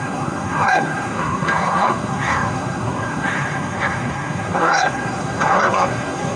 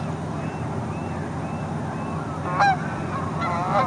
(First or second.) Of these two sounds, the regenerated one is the first